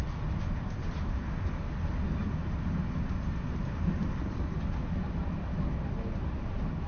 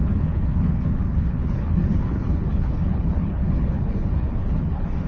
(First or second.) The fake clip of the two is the second